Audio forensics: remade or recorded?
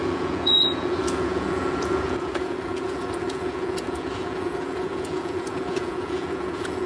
remade